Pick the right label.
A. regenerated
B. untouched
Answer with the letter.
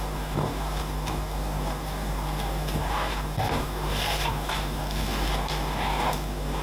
A